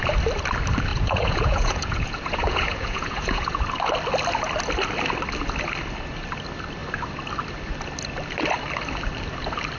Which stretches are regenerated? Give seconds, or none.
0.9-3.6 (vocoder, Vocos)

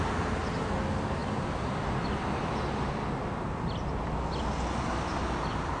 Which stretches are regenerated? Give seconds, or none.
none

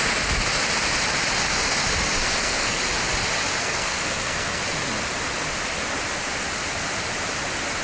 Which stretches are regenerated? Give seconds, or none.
2.2-2.8 (codec, SNAC); 3.6-4.6

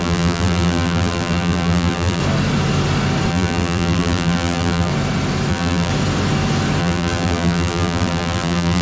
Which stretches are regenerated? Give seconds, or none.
0.0-2.2 (vocoder, BigVGAN v2); 3.3-4.9; 5.5-5.9; 6.8-8.8

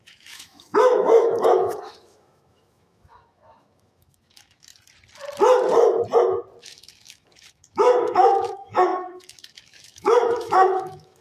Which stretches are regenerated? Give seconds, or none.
0.0-4.7 (autoencoder, DAC-VAE); 6.6-11.2